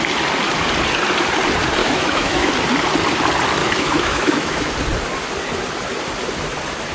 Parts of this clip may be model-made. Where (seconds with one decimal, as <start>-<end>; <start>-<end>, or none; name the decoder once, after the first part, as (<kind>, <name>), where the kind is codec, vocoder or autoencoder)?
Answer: 1.8-2.5 (autoencoder, DAC-VAE); 3.6-4.7